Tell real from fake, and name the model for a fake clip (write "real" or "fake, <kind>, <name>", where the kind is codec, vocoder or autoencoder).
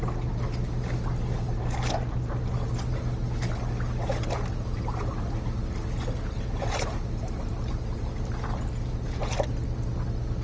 real